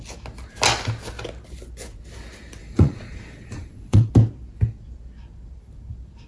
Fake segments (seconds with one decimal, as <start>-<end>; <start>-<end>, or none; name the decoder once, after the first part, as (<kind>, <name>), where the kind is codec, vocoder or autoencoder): 2.6-4.1 (vocoder, Vocos)